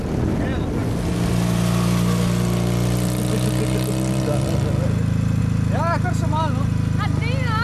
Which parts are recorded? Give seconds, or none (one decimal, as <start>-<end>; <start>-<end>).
0.0-7.6